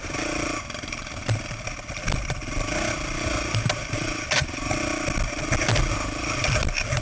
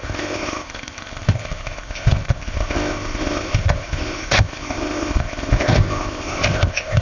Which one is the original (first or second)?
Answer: first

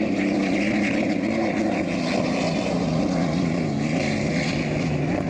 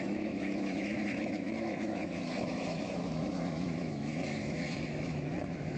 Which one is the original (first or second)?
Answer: first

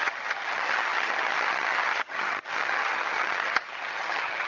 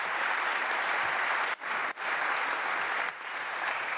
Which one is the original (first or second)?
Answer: second